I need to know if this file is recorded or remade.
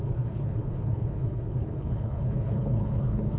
remade